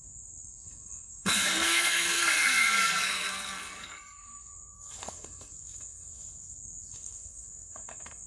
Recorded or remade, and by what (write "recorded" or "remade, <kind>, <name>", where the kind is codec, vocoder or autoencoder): remade, codec, SNAC